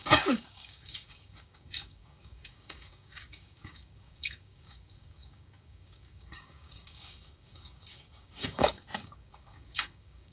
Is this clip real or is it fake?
fake